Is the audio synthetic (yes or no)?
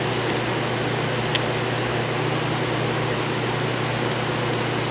no